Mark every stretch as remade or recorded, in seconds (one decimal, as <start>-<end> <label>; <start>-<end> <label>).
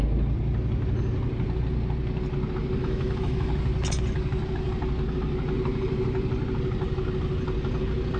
0.0-2.8 recorded; 2.8-3.5 remade; 3.5-8.2 recorded